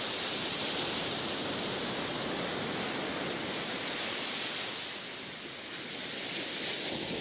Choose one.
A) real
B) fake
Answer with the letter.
A